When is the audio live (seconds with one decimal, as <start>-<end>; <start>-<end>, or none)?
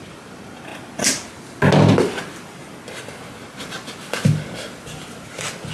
0.0-5.7